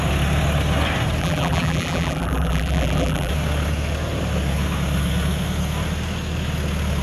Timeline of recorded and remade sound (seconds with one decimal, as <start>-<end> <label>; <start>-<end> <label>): 0.0-1.2 recorded; 1.2-3.3 remade; 3.3-7.0 recorded